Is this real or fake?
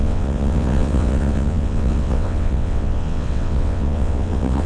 fake